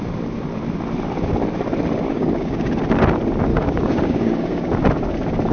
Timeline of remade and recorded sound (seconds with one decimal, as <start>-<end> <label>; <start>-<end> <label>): 0.0-2.1 recorded; 2.1-2.7 remade; 2.7-3.5 recorded; 3.5-4.7 remade; 4.7-5.5 recorded